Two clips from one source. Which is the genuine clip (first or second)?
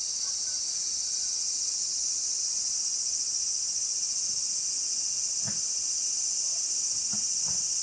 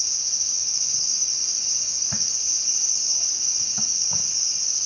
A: first